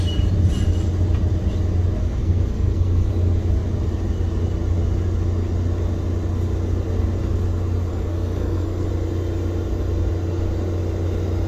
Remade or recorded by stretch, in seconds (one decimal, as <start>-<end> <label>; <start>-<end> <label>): 0.0-2.0 recorded; 2.0-3.1 remade; 3.1-7.9 recorded; 7.9-8.9 remade; 8.9-11.5 recorded